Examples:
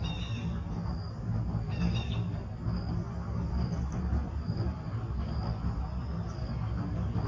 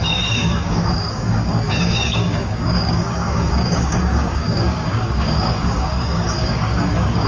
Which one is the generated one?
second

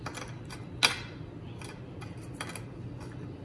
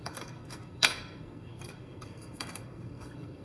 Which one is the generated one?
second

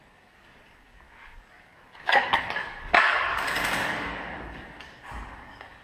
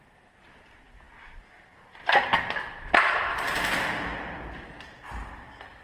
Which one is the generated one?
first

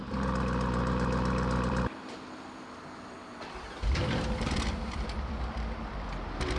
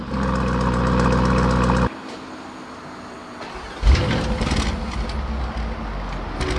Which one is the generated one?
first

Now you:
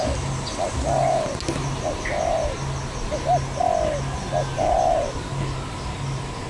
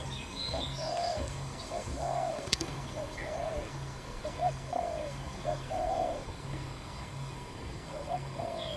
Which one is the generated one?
second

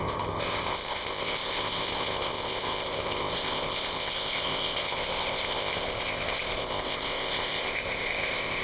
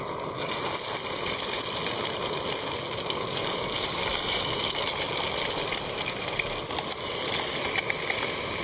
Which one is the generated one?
first